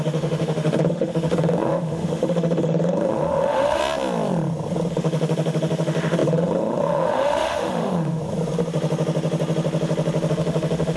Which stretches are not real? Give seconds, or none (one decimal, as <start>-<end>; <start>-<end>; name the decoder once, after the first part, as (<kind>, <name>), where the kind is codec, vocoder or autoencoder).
0.0-3.8 (autoencoder, DAC-VAE); 4.9-8.2; 10.3-11.0